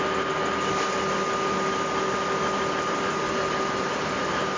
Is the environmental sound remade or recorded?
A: recorded